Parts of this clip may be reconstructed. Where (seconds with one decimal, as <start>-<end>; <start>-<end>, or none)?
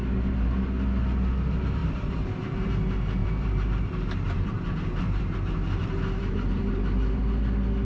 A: 1.8-2.7; 3.2-7.2